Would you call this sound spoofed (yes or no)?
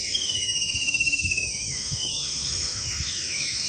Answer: yes